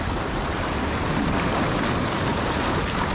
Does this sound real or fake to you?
real